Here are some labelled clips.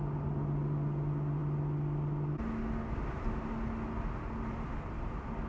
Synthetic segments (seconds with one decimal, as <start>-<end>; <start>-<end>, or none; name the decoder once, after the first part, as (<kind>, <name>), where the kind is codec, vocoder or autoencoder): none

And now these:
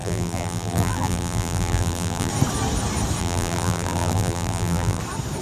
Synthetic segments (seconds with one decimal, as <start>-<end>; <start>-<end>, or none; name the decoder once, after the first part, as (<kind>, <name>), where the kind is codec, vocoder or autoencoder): 0.0-2.3 (vocoder, BigVGAN v2); 3.2-5.0

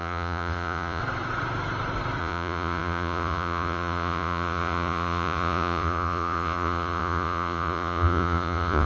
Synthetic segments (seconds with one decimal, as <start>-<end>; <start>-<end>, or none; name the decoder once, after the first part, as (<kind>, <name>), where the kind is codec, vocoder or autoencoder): 0.0-1.0 (vocoder, Vocos); 2.2-8.9

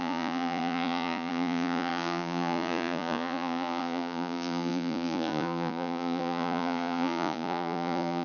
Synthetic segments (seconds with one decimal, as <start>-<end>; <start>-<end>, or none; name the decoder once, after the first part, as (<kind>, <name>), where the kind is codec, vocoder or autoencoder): 0.0-8.2 (vocoder, Vocos)

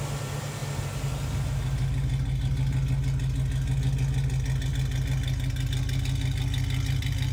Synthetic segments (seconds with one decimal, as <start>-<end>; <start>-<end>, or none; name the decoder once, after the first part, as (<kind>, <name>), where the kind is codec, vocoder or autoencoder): 0.0-0.6 (vocoder, BigVGAN v2); 4.7-7.3

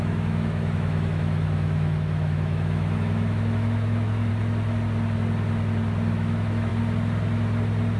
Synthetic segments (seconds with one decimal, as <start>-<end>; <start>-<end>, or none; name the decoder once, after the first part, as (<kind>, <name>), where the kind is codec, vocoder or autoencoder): 0.0-4.3 (autoencoder, DAC-VAE); 6.1-6.7